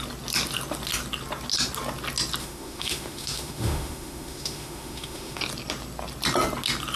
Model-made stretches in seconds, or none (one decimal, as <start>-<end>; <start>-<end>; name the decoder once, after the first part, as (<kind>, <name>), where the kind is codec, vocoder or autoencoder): 2.4-5.4 (autoencoder, DAC-VAE)